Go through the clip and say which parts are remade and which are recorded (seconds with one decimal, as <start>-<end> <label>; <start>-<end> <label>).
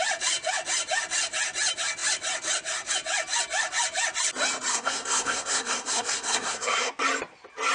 0.0-4.7 recorded; 4.7-6.9 remade; 6.9-7.7 recorded